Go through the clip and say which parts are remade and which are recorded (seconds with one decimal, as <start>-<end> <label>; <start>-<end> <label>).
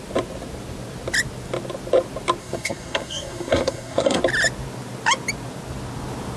0.0-2.4 recorded; 2.4-4.2 remade; 4.2-6.4 recorded